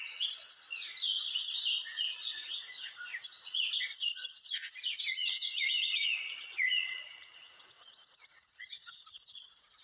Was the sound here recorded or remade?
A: remade